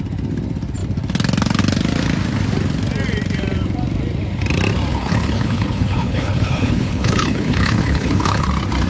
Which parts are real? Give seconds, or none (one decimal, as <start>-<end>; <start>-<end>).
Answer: 0.0-4.9; 8.5-8.9